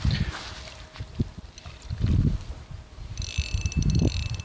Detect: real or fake real